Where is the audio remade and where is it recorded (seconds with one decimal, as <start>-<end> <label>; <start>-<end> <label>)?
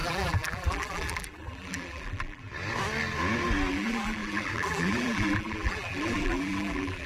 0.0-2.5 remade; 2.5-3.7 recorded; 3.7-7.1 remade